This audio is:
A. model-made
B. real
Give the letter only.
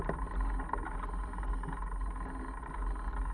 B